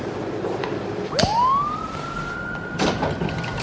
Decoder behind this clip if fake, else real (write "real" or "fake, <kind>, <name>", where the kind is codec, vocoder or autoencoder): real